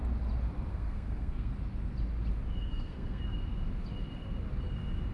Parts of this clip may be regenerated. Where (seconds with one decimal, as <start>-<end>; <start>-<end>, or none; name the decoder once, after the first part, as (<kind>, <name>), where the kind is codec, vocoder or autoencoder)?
0.7-1.5 (codec, SNAC); 2.6-3.2